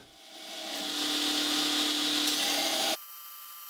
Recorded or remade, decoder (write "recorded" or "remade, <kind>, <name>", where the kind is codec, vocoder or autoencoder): recorded